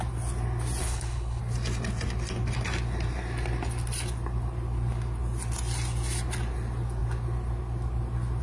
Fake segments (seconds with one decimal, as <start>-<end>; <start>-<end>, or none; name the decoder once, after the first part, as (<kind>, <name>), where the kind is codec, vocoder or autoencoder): 0.8-1.4 (codec, HILCodec)